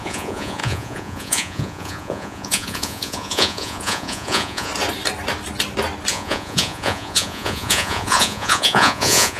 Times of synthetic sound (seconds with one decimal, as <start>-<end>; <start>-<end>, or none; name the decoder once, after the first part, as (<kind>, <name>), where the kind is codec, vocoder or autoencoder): 0.0-4.7 (vocoder, Vocos); 6.1-9.4